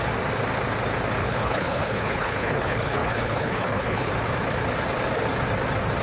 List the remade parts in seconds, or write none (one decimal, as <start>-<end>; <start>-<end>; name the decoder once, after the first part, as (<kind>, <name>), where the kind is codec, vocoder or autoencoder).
1.2-4.1 (codec, HILCodec)